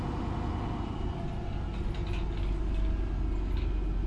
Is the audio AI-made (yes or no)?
no